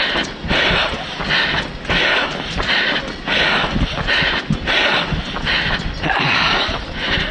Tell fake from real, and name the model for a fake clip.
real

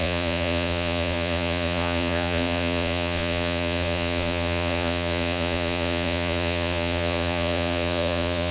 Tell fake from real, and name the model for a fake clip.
fake, vocoder, Vocos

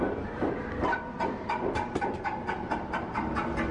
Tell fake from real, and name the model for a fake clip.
real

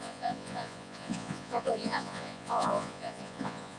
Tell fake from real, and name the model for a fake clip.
fake, vocoder, Vocos